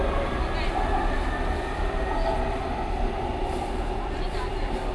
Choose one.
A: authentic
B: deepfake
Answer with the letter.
A